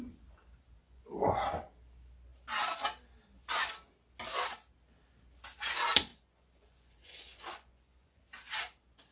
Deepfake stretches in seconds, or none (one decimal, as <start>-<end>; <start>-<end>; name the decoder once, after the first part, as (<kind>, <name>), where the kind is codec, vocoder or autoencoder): 0.8-1.4 (vocoder, Vocos); 6.1-8.2